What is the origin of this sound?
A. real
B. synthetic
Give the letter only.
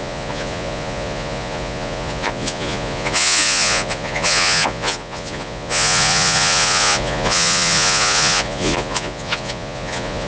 B